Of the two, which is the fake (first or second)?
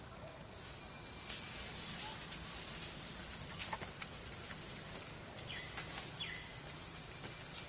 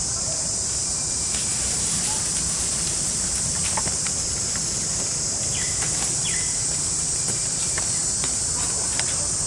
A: second